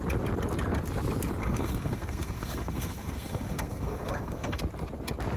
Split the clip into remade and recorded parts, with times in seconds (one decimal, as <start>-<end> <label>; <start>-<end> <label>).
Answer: 0.0-1.4 recorded; 1.4-4.6 remade; 4.6-5.4 recorded